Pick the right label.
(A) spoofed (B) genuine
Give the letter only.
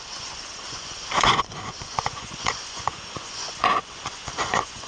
A